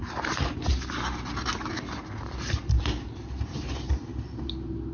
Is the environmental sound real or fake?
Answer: real